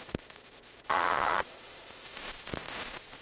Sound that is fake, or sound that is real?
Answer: fake